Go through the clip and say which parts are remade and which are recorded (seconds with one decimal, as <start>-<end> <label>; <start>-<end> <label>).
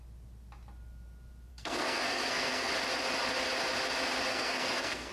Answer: 0.0-1.5 recorded; 1.5-2.7 remade; 2.7-4.3 recorded; 4.3-5.1 remade